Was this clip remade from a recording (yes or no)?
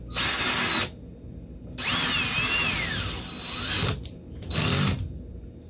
no